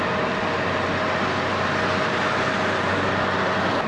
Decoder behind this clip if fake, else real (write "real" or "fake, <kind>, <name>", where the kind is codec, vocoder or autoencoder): real